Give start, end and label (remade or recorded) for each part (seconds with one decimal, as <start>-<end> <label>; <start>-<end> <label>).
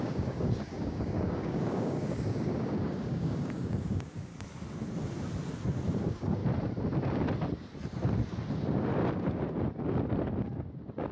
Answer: 0.0-4.3 remade; 4.3-6.0 recorded; 6.0-6.4 remade; 6.4-10.4 recorded; 10.4-11.1 remade